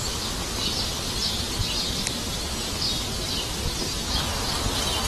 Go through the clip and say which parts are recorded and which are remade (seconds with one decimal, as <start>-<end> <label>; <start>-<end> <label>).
0.0-5.1 recorded